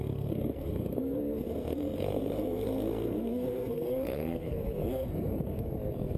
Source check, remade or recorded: remade